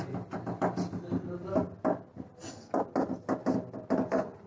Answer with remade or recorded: recorded